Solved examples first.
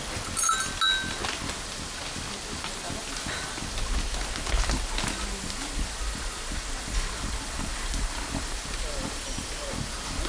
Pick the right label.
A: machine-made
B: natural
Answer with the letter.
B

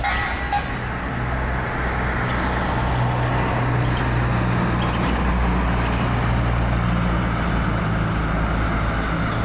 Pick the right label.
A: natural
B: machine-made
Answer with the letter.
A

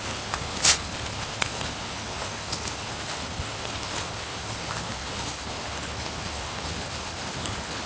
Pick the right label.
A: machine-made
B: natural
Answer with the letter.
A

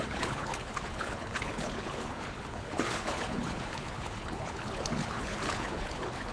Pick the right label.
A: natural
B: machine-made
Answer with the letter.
B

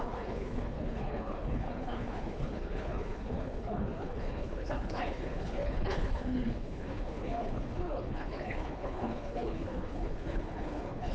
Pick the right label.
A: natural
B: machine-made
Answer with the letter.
B